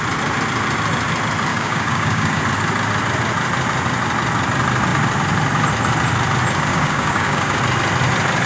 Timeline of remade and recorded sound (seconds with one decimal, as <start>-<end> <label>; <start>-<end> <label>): 0.0-1.5 recorded; 1.5-2.4 remade; 2.4-6.7 recorded; 6.7-7.6 remade; 7.6-8.5 recorded